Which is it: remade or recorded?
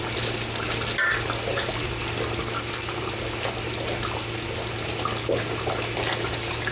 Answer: recorded